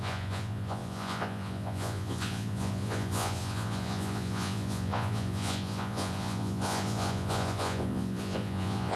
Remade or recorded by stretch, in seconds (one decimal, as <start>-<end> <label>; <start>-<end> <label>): 0.0-9.0 remade